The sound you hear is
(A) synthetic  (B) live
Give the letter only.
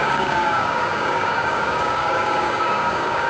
A